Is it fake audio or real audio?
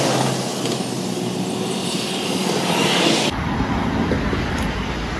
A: real